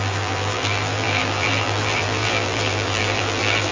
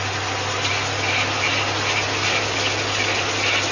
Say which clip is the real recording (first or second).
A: second